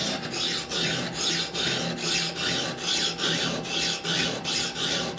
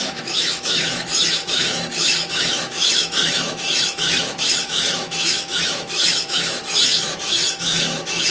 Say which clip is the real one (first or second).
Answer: first